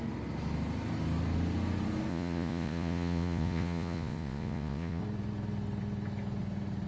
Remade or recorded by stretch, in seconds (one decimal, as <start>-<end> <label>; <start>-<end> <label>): 0.0-2.1 recorded; 2.1-5.0 remade; 5.0-6.9 recorded